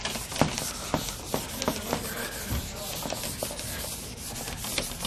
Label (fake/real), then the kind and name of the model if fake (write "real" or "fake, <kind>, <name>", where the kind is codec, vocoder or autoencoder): real